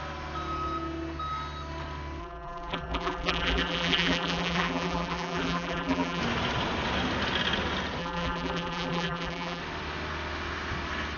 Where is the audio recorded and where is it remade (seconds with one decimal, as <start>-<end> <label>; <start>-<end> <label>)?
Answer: 0.0-2.2 recorded; 2.2-6.2 remade; 6.2-8.0 recorded; 8.0-9.6 remade; 9.6-11.2 recorded